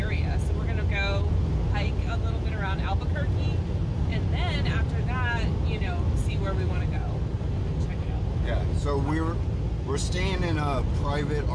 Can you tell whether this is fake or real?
real